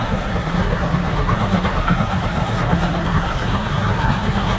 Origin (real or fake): fake